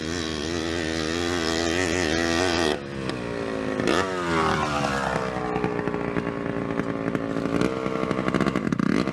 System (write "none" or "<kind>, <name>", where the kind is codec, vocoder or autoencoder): none